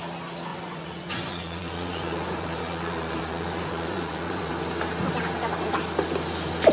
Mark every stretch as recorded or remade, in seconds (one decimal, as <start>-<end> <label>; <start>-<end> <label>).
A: 0.0-0.5 recorded; 0.5-4.5 remade; 4.5-6.7 recorded